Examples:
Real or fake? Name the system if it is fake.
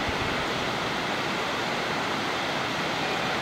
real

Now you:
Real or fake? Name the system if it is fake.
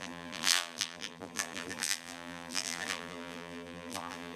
fake, vocoder, BigVGAN v2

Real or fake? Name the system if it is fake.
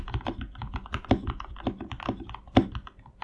real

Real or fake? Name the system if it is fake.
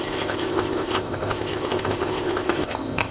fake, codec, ZipCodec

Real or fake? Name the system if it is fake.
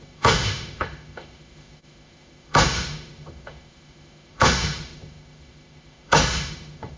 fake, autoencoder, DAC-VAE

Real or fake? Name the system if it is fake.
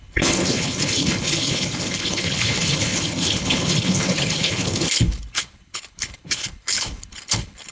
fake, codec, HILCodec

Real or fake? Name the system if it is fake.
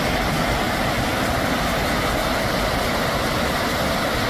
real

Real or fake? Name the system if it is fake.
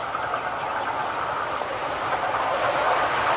real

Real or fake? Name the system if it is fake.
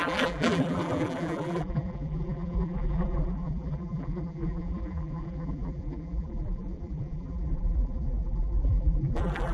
fake, vocoder, BigVGAN v2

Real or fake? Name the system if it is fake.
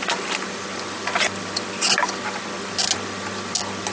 real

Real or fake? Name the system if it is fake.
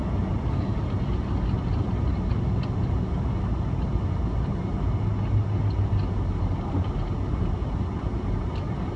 real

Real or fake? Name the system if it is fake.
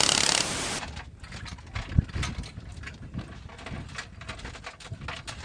real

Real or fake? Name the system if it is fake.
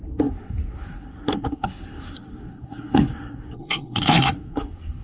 fake, codec, SNAC